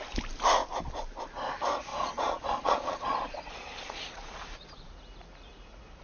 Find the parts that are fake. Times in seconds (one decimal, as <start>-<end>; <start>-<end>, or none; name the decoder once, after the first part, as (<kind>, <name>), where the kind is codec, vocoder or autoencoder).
1.9-4.9 (vocoder, Vocos)